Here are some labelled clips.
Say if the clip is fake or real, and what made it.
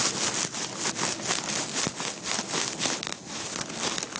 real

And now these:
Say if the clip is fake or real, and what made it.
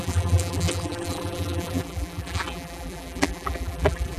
fake, vocoder, BigVGAN v2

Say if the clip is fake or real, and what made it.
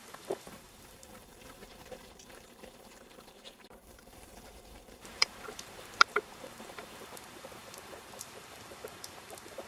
fake, vocoder, BigVGAN v2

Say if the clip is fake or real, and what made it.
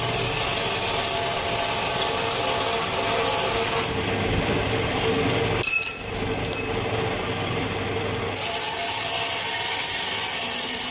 real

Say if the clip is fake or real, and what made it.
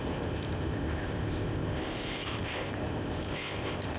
fake, codec, ZipCodec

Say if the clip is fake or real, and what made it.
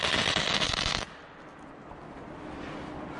real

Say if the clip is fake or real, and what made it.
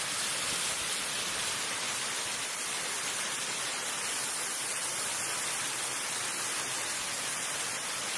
real